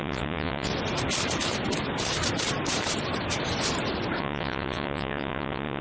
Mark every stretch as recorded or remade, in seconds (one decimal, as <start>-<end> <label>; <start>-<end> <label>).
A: 0.0-0.7 remade; 0.7-4.2 recorded; 4.2-5.8 remade